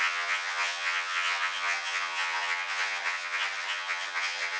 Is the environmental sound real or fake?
fake